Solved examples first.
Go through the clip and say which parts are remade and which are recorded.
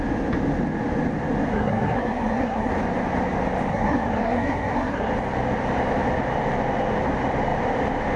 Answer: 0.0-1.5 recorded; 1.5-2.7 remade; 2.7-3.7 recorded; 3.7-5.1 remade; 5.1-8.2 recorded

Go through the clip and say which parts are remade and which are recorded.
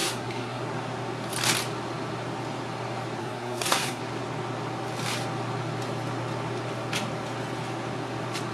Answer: 0.0-0.6 remade; 0.6-3.2 recorded; 3.2-4.0 remade; 4.0-8.5 recorded